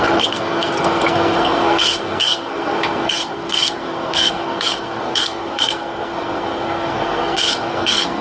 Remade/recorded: remade